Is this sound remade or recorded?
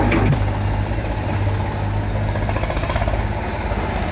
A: recorded